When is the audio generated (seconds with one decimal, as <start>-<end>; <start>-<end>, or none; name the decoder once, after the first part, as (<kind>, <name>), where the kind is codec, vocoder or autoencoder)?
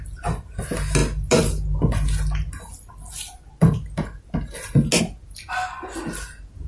none